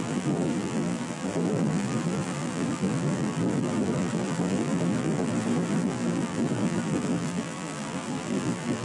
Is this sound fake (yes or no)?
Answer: yes